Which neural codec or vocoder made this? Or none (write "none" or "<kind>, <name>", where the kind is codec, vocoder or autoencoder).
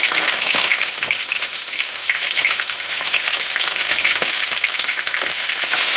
autoencoder, DAC-VAE